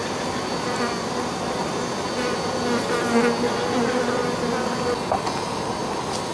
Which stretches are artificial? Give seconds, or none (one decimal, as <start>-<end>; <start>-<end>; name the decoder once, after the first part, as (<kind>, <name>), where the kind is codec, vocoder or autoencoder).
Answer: none